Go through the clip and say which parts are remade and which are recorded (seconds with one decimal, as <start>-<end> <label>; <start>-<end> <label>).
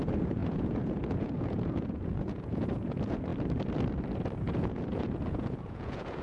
0.0-3.3 remade; 3.3-4.4 recorded; 4.4-6.2 remade